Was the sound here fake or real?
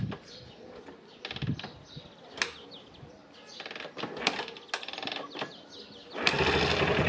real